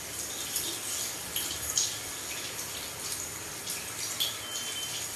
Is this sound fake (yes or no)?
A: no